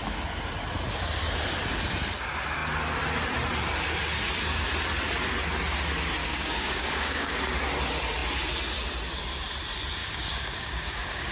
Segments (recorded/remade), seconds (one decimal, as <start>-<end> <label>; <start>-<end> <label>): 0.0-6.2 recorded; 6.2-7.4 remade; 7.4-10.0 recorded; 10.0-11.3 remade